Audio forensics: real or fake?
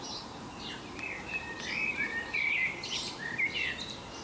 fake